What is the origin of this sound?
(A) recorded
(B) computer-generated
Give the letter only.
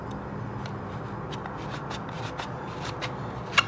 A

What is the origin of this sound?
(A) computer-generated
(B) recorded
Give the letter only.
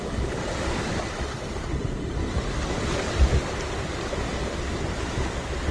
B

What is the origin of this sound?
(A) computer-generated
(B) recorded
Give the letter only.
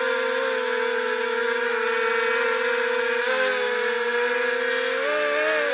B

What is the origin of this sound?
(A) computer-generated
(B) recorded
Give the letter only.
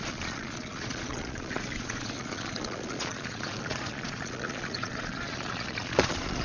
A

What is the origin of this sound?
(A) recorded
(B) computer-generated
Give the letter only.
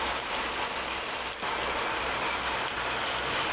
A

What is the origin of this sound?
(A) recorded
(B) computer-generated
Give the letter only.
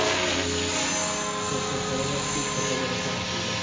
A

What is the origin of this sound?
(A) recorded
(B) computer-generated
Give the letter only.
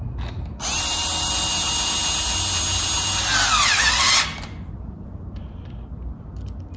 A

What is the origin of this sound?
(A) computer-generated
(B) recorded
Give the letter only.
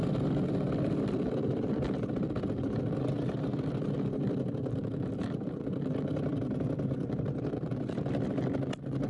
B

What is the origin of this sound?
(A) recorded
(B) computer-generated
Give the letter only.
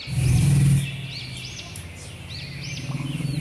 A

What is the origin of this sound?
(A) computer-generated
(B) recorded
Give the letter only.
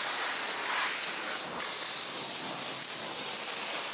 B